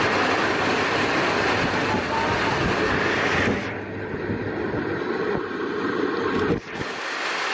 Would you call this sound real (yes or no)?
yes